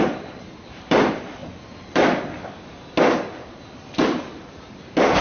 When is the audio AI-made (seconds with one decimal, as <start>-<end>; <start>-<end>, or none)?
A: 0.0-1.4; 4.5-5.2